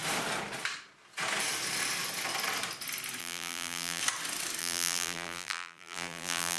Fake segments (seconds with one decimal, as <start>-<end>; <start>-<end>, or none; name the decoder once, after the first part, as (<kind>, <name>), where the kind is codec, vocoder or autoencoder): 3.2-4.0 (vocoder, BigVGAN v2); 4.6-6.6